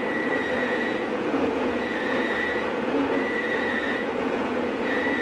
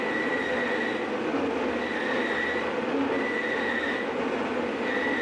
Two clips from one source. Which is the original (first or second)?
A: second